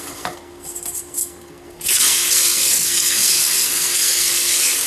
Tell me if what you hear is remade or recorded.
remade